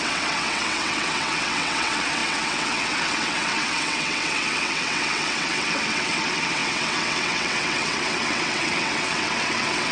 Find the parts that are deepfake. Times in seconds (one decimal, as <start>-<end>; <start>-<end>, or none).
0.0-9.9

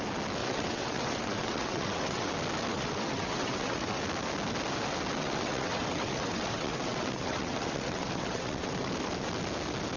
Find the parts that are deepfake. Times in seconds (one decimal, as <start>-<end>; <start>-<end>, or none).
0.4-2.3; 2.7-4.0; 5.2-8.9

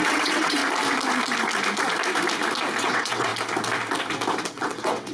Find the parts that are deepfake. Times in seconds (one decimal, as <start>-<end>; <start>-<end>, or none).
0.0-0.6; 2.8-3.3; 4.4-5.1

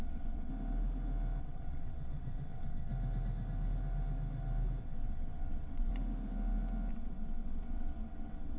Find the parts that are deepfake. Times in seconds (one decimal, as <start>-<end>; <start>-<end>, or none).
0.0-0.5; 1.4-2.9; 4.8-5.9; 6.9-8.6

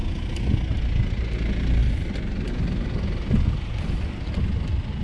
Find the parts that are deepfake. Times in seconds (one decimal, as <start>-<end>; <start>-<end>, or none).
none

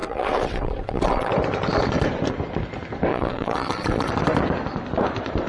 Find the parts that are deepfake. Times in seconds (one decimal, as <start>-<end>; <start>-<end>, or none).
0.0-1.3; 3.1-4.1

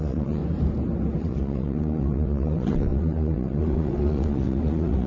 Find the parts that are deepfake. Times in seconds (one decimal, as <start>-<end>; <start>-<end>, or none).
0.0-0.4; 1.2-5.1